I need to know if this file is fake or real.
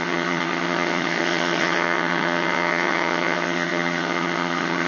fake